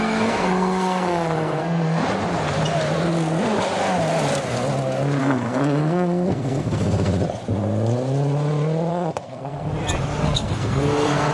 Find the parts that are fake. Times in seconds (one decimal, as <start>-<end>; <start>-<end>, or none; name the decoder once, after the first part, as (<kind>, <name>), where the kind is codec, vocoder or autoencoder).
0.0-2.0 (codec, SNAC); 5.2-7.1; 8.9-9.7; 10.2-11.3